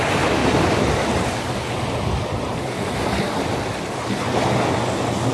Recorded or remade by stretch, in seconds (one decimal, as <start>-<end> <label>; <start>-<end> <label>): 0.0-5.3 recorded